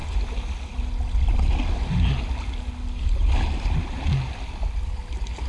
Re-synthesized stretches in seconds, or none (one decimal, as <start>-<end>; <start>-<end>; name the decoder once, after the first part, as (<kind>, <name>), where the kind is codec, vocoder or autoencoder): none